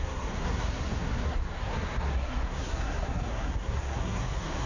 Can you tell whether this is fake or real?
fake